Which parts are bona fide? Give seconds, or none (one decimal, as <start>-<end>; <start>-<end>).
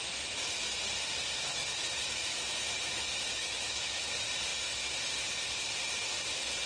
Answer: 0.0-1.5; 4.1-6.7